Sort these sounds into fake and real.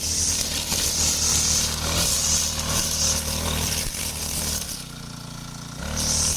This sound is real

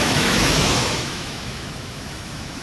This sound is fake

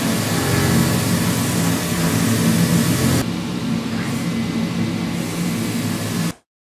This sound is real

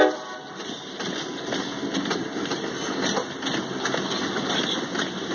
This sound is real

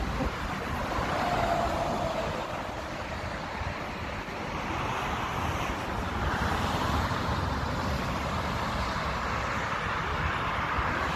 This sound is real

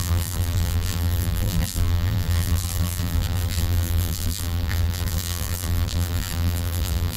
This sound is fake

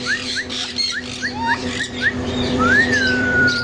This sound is fake